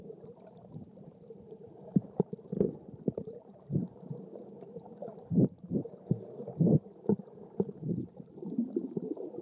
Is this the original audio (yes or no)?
no